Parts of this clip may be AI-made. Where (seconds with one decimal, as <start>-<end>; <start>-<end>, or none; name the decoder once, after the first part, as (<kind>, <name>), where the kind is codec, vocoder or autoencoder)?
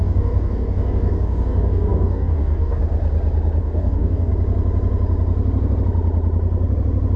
0.0-2.8 (codec, DAC); 3.6-4.3